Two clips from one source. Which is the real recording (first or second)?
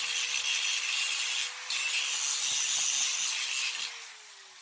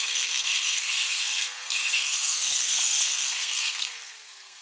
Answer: first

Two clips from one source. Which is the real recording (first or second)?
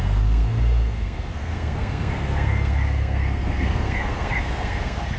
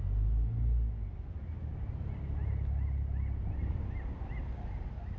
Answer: second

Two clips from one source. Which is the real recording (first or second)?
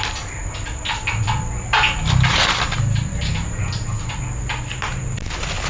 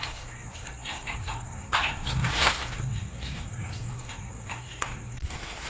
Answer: first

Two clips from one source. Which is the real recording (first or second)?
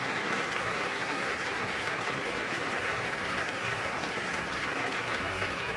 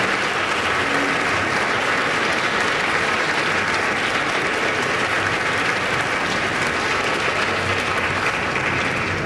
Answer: second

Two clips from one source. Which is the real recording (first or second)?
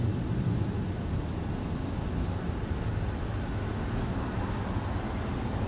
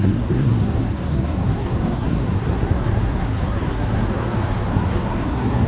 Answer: first